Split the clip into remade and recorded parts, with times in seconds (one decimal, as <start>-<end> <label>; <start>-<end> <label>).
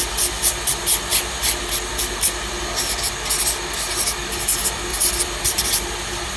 0.0-4.9 recorded; 4.9-6.4 remade